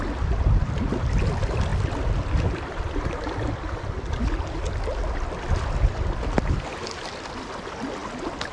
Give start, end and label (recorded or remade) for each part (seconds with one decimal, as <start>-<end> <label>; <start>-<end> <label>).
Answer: 0.0-8.5 recorded